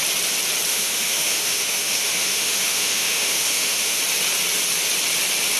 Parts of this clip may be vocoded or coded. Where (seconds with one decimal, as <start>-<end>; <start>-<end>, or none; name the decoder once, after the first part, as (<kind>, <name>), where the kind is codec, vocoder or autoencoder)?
0.7-4.0 (autoencoder, DAC-VAE)